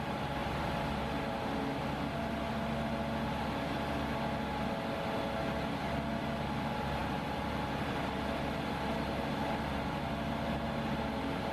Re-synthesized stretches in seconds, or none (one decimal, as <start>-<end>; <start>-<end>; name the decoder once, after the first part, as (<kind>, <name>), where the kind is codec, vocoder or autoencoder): none